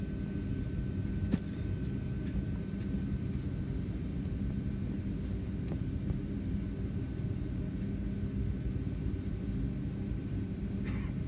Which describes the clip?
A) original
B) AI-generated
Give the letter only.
A